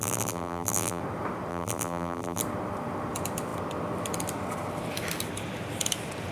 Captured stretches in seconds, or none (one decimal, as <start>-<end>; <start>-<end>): 1.0-1.5; 2.4-6.3